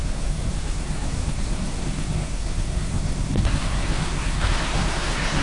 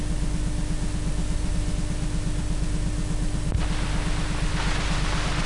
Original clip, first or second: second